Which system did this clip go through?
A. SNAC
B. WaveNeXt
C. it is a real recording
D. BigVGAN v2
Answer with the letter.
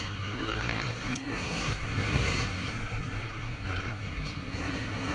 A